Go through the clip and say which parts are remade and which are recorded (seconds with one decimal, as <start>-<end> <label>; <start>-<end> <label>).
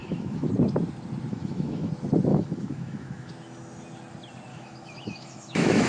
0.0-0.5 remade; 0.5-1.3 recorded; 1.3-1.9 remade; 1.9-2.3 recorded; 2.3-3.3 remade; 3.3-4.5 recorded; 4.5-5.9 remade